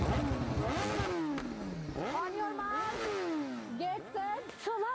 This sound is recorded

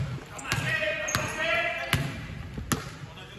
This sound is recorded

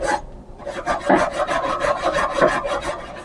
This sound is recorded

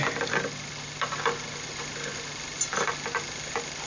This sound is recorded